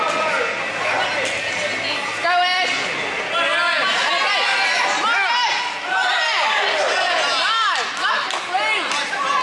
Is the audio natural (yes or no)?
yes